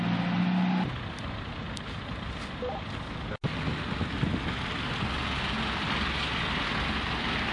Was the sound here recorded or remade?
recorded